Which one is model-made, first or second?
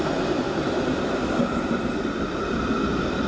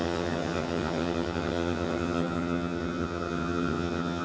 second